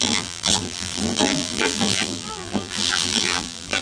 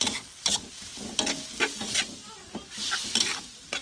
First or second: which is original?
second